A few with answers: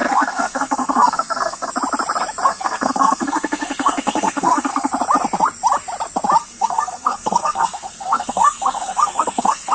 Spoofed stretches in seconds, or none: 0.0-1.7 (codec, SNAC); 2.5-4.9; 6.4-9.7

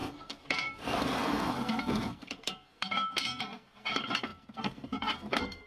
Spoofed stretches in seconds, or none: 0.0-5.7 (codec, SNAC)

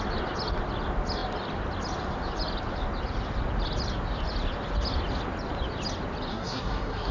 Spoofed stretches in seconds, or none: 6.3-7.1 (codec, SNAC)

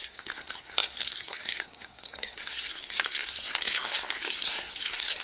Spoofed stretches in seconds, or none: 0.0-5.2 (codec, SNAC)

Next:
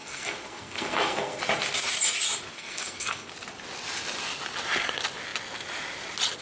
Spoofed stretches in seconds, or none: 0.0-1.4 (codec, SNAC); 2.5-3.3

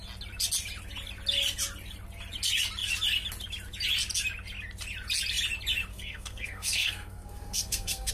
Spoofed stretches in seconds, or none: 5.9-8.1 (codec, SNAC)

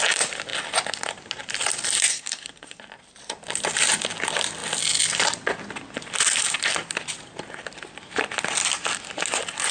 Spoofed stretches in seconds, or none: 2.1-2.8 (codec, SNAC)

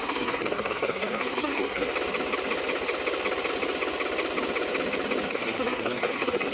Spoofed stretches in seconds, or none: 0.0-1.9 (codec, SNAC); 5.3-6.5